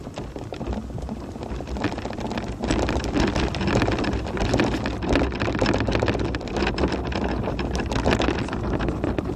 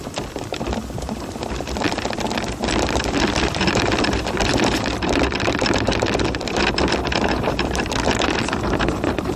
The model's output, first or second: second